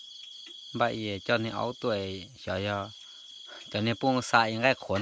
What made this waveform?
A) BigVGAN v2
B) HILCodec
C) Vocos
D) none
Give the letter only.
D